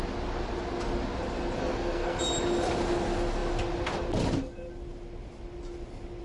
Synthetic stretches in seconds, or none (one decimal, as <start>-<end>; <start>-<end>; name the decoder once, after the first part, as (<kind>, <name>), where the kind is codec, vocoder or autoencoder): 1.6-2.2 (codec, SNAC)